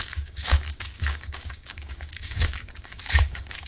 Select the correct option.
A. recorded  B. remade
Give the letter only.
B